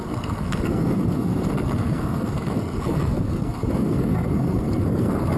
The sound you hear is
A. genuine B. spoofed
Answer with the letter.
B